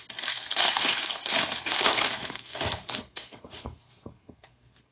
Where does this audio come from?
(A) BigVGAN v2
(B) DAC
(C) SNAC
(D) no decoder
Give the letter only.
C